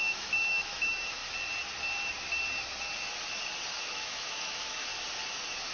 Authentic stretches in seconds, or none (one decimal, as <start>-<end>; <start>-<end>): 1.2-3.8; 4.9-5.7